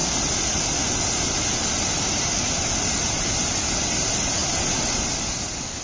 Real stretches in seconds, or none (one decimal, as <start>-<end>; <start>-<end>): 0.0-5.8